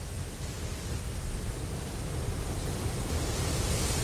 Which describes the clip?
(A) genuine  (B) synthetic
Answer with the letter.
A